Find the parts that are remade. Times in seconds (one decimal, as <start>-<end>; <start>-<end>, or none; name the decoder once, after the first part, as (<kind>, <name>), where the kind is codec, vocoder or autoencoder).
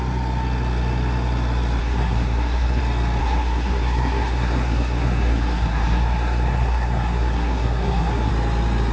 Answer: 1.8-2.8 (codec, SNAC); 3.2-8.3